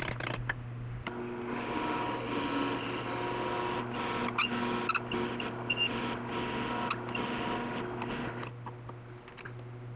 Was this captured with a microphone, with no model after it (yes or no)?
yes